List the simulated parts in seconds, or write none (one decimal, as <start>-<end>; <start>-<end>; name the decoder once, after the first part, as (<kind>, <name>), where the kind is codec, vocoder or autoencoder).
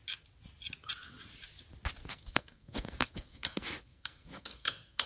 2.0-5.1 (codec, SNAC)